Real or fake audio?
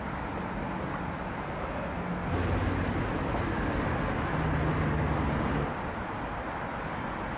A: real